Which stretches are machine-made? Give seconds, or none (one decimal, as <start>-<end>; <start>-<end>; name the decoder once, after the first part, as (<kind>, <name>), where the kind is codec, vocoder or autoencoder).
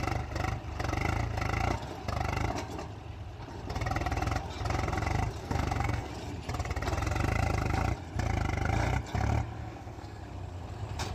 5.4-6.1 (codec, SNAC); 9.6-10.2